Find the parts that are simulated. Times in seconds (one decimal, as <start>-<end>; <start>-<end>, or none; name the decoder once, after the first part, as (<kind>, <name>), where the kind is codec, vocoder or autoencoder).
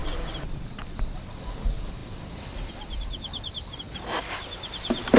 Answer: 0.0-1.4 (vocoder, BigVGAN v2); 2.0-4.2